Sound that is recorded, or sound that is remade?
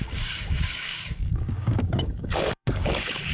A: remade